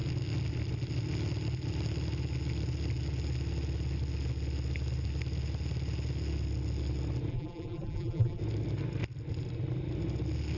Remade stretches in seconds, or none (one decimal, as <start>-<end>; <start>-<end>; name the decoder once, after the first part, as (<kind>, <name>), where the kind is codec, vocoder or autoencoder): 7.3-8.4 (vocoder, BigVGAN v2)